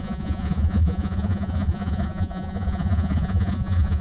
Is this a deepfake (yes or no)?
yes